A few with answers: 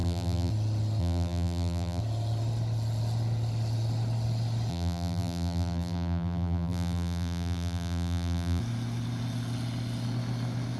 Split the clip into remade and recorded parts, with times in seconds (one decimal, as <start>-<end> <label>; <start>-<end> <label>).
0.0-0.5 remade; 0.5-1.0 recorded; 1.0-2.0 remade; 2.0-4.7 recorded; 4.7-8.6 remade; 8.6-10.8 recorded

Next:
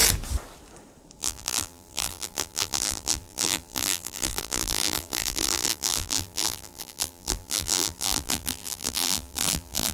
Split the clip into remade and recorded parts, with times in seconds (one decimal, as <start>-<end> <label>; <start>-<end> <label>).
0.0-1.2 recorded; 1.2-9.9 remade

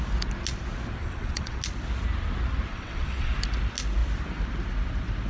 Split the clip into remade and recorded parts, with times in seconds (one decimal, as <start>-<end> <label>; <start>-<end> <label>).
0.0-1.0 recorded; 1.0-1.6 remade; 1.6-2.7 recorded; 2.7-3.3 remade; 3.3-5.3 recorded

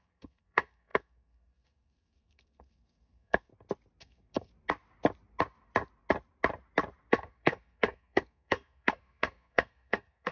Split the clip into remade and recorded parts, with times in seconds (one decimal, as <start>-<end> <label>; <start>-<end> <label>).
0.0-3.5 remade; 3.5-4.0 recorded; 4.0-4.5 remade; 4.5-7.1 recorded; 7.1-10.3 remade